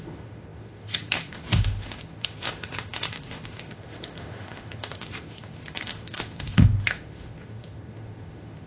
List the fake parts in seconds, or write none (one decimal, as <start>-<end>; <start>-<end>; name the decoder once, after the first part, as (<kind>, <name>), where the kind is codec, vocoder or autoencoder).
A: 0.0-8.7 (autoencoder, DAC-VAE)